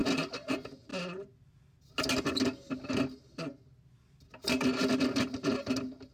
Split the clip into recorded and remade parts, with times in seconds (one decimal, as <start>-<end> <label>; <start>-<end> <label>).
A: 0.0-6.1 recorded